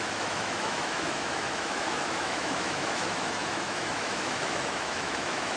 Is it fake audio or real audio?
fake